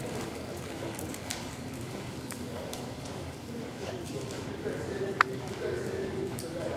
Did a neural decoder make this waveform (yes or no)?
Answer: yes